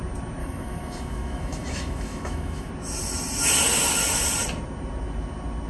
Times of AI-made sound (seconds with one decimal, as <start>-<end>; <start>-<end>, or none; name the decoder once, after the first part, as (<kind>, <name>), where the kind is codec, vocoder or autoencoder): 0.4-2.7 (autoencoder, DAC-VAE)

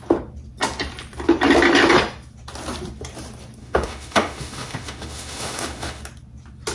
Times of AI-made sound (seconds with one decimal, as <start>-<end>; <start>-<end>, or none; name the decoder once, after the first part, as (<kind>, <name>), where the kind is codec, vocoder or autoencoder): 3.6-6.0 (autoencoder, DAC-VAE)

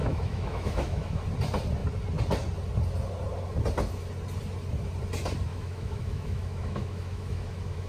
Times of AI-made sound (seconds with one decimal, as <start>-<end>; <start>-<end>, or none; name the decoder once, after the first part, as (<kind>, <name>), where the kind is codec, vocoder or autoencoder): 0.0-1.2 (autoencoder, DAC-VAE); 5.5-7.9

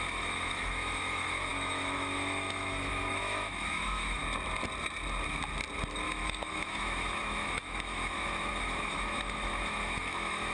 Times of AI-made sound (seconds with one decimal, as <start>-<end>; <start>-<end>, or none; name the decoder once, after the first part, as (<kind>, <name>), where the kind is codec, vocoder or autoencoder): 0.0-4.2 (autoencoder, DAC-VAE); 6.1-10.5

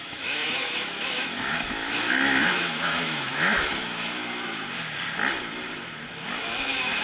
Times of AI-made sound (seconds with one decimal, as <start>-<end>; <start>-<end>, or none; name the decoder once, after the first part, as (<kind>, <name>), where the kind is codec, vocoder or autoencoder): 0.0-4.2 (autoencoder, DAC-VAE); 6.4-7.0

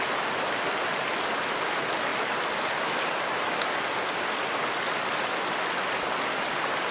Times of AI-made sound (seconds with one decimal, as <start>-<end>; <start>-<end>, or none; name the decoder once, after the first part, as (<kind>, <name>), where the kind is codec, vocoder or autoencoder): none

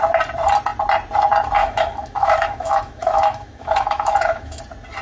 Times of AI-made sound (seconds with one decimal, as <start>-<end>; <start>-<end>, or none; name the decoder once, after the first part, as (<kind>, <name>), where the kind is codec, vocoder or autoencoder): 1.6-4.6 (autoencoder, DAC-VAE)

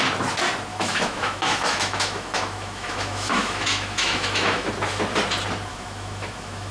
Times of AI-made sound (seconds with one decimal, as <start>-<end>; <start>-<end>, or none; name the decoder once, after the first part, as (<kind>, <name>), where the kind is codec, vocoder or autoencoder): 0.7-4.7 (autoencoder, DAC-VAE); 5.7-6.7